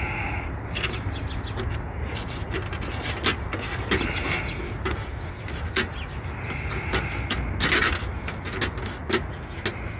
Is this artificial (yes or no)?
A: no